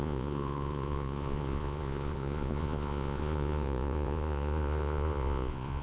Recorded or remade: remade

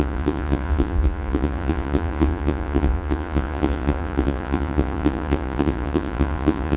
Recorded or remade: remade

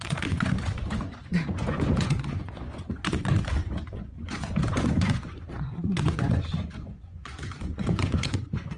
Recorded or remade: remade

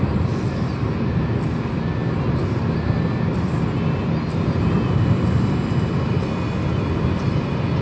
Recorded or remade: recorded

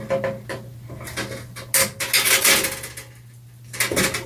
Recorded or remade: recorded